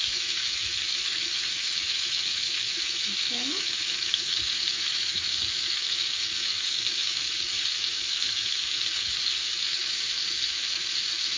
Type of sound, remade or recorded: remade